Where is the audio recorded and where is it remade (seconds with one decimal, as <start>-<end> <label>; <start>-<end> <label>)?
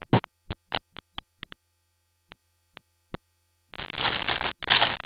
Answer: 0.0-5.1 recorded